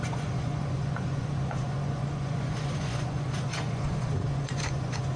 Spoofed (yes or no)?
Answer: yes